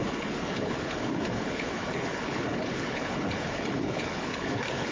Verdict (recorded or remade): remade